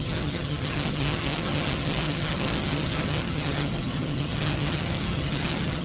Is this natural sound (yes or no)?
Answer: no